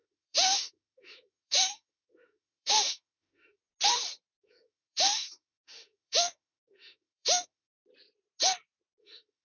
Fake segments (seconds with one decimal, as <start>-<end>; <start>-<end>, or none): 0.0-3.6; 4.4-7.7; 9.0-9.4